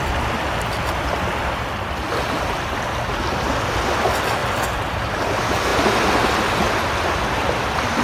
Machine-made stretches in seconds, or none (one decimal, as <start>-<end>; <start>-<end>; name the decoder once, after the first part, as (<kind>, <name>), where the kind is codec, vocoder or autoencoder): none